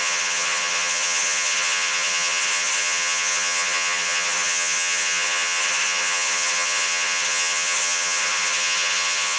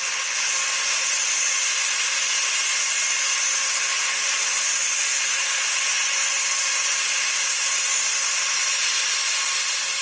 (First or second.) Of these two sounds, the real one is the second